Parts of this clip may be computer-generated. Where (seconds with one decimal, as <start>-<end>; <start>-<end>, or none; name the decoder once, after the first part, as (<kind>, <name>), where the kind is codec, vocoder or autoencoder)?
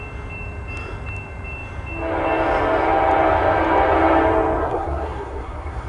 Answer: 4.6-5.9 (codec, SNAC)